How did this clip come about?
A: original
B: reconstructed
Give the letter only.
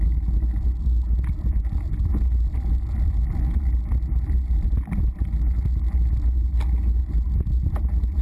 A